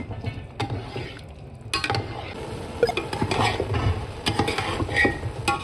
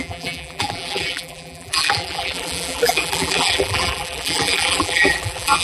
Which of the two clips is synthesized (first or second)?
second